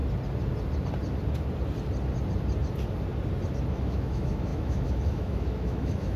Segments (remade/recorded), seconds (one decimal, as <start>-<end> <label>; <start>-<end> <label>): 0.0-3.7 recorded; 3.7-6.2 remade